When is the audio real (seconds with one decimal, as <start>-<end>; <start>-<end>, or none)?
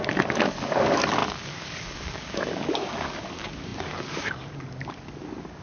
none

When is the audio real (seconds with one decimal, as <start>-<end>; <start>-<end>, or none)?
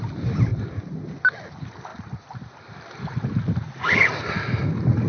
0.0-5.1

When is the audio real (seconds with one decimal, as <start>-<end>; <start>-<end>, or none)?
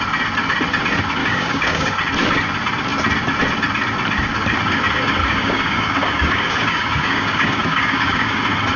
0.0-1.2; 2.0-5.2; 8.4-8.8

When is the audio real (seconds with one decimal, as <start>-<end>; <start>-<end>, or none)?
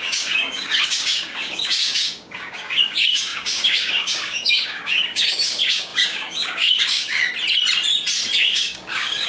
7.3-8.4